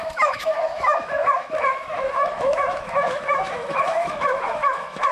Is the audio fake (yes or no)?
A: yes